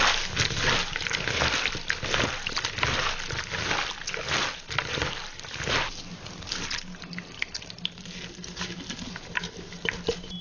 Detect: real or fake real